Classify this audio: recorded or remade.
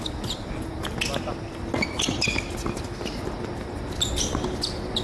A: recorded